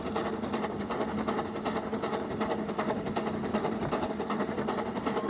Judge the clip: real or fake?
real